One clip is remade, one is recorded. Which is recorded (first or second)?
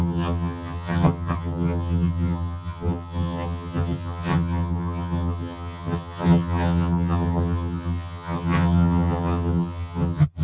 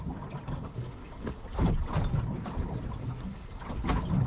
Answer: second